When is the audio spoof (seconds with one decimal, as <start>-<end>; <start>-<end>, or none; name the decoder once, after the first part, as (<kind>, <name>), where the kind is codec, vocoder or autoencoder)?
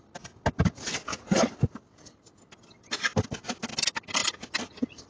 none